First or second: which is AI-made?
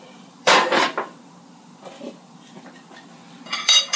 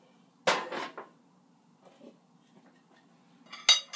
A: first